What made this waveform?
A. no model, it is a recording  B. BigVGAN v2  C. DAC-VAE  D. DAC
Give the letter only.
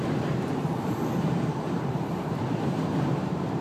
B